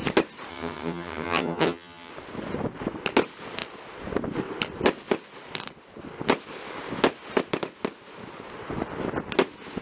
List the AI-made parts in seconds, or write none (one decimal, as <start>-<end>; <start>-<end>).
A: 0.5-2.1